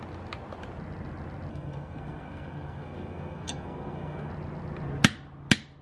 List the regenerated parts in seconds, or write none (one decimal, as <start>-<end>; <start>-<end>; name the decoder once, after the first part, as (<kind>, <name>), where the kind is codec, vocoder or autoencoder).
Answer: 1.5-4.3 (codec, SNAC)